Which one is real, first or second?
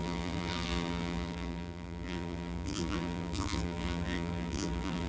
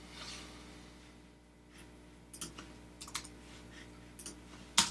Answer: second